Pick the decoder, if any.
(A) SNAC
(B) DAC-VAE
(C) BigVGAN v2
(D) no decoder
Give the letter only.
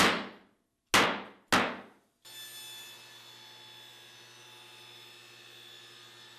D